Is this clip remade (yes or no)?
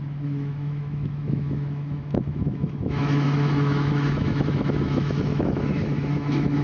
yes